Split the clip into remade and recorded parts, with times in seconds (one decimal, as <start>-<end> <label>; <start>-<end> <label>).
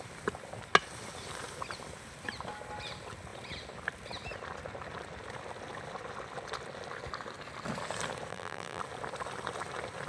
0.0-8.3 recorded; 8.3-8.8 remade; 8.8-10.1 recorded